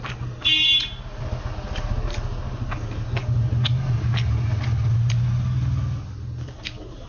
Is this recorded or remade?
recorded